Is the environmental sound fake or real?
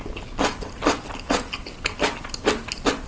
real